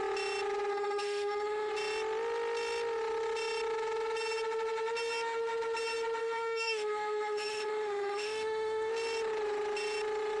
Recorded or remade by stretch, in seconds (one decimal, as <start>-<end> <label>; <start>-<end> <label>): 0.0-0.7 recorded; 0.7-1.7 remade; 1.7-6.2 recorded; 6.2-8.9 remade; 8.9-10.4 recorded